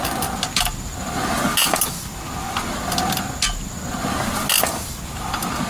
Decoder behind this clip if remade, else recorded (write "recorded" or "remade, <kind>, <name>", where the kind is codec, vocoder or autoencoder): recorded